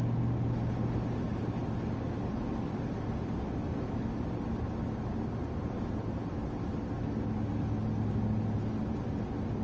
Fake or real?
real